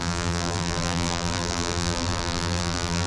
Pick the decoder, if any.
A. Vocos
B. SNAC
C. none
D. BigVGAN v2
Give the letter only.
D